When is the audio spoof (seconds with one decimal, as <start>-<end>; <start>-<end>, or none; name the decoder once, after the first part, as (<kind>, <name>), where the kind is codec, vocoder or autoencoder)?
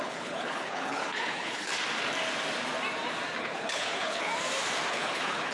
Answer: 0.0-1.7 (codec, HILCodec); 3.4-4.3; 4.9-5.5